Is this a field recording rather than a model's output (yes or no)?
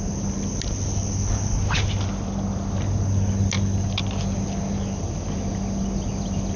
yes